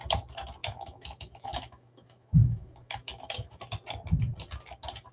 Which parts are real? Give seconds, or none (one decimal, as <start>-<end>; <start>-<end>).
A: 0.0-0.6; 3.6-5.1